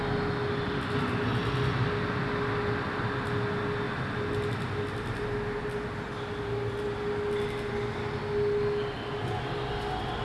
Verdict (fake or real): real